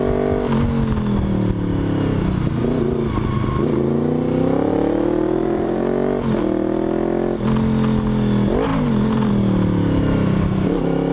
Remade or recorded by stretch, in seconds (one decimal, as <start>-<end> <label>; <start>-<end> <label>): 0.0-4.7 recorded; 4.7-5.8 remade; 5.8-8.7 recorded; 8.7-9.3 remade; 9.3-11.1 recorded